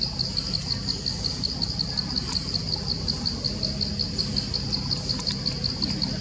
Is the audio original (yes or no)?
yes